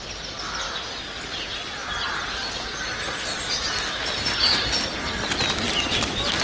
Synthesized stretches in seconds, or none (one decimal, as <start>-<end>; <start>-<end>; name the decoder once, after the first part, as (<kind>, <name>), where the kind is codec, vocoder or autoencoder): none